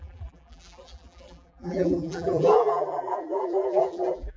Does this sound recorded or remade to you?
remade